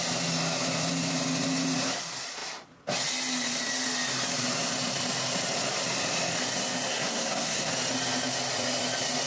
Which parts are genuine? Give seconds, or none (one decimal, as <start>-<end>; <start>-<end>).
0.0-6.9; 7.7-9.3

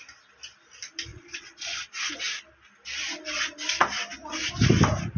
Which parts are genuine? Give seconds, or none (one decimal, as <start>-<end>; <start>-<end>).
0.0-1.1; 1.9-5.2